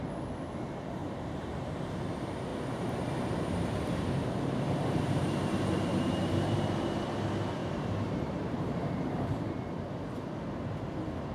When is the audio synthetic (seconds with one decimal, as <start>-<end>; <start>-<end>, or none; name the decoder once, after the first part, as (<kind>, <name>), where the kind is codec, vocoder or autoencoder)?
1.0-2.1 (vocoder, BigVGAN v2); 2.5-6.6; 7.6-9.6